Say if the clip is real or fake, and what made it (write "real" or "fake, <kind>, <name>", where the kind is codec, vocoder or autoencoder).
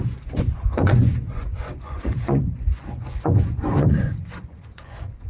fake, vocoder, Vocos